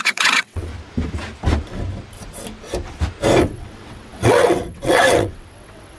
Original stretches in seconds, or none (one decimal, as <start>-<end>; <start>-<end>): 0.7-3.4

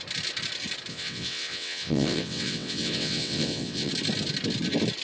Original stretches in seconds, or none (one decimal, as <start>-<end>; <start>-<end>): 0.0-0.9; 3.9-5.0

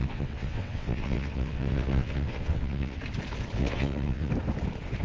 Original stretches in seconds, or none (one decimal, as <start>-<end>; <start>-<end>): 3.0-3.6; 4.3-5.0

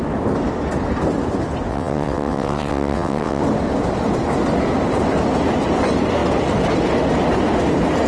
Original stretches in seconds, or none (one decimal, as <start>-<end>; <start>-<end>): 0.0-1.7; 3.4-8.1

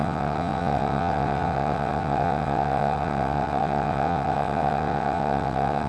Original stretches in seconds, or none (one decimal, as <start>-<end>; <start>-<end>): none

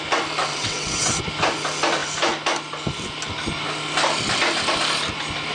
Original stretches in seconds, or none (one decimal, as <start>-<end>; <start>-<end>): 0.0-0.5; 1.2-5.5